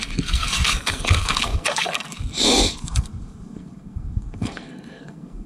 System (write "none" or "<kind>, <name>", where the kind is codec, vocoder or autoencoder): codec, SNAC